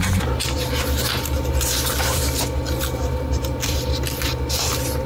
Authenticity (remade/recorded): remade